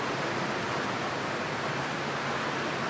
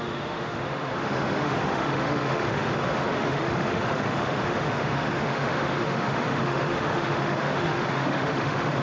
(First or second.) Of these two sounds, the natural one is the first